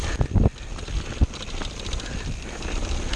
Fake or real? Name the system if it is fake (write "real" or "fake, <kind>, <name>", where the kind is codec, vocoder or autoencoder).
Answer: real